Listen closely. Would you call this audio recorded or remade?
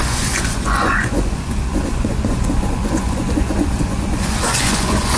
remade